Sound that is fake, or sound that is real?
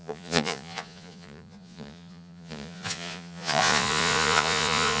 fake